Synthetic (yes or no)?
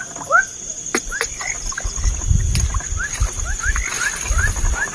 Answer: no